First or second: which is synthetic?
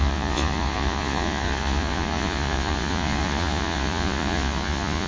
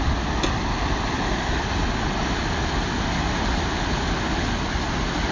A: first